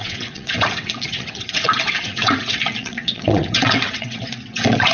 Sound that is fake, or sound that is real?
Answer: fake